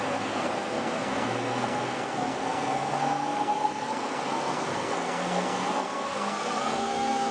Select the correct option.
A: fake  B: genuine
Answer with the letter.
A